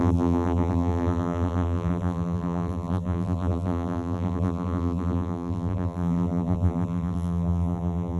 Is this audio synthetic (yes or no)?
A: yes